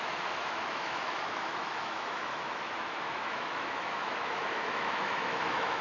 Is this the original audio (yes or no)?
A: no